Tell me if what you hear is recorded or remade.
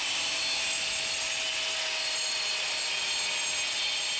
recorded